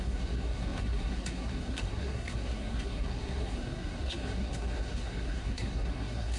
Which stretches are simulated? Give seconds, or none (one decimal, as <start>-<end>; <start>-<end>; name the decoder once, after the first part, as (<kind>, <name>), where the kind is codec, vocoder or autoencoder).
0.0-6.4 (codec, SNAC)